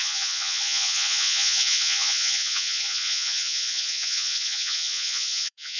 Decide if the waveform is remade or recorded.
remade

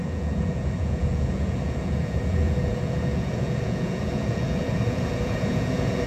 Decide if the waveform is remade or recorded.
remade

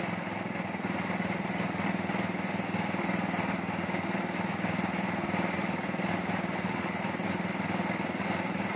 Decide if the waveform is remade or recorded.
recorded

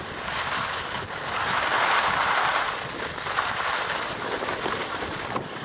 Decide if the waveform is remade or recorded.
recorded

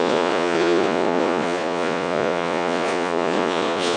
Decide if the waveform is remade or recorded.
remade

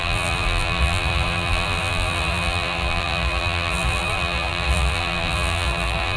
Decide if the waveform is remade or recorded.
remade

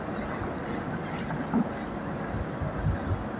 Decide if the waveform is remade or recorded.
recorded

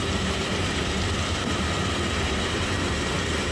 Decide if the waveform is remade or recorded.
remade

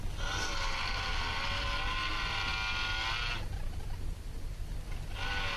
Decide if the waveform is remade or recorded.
recorded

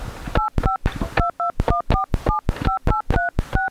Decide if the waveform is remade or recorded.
recorded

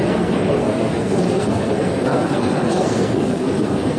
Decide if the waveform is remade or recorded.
remade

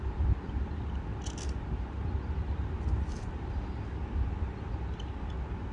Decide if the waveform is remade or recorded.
recorded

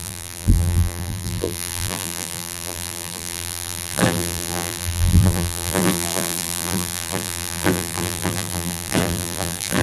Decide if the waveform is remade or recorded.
remade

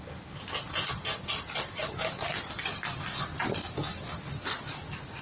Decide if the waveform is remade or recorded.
recorded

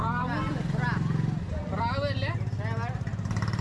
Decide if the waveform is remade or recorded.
recorded